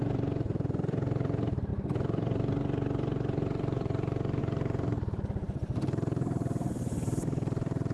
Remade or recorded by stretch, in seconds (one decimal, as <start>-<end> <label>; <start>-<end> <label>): 0.0-7.9 remade